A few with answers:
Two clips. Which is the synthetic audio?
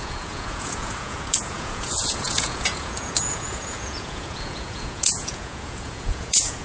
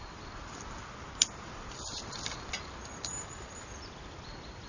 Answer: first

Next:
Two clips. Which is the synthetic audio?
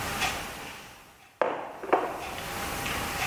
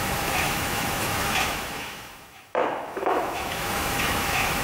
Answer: second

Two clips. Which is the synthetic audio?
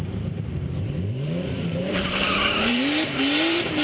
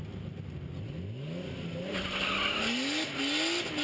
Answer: first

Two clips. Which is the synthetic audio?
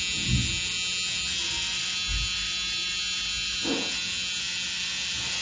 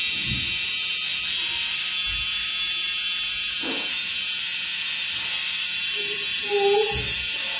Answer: second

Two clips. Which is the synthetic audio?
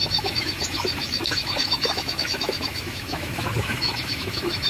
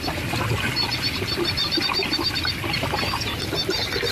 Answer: first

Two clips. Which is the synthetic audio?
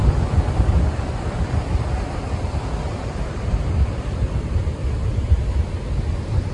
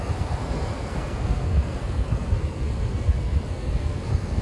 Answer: second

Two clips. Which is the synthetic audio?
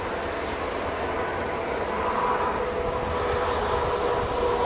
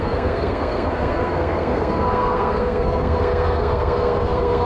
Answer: second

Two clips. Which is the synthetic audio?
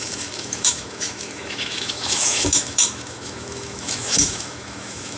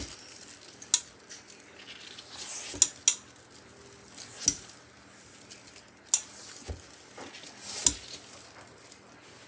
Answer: first